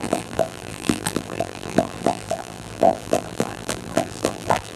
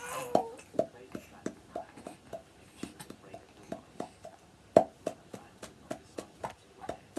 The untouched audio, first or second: second